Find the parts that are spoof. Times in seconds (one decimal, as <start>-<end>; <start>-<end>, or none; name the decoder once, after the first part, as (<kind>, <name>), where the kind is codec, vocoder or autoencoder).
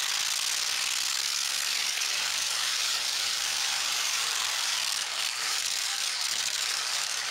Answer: 1.1-7.3 (codec, DAC)